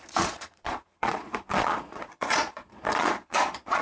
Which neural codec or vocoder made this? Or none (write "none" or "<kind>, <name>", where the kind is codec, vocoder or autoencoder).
vocoder, Vocos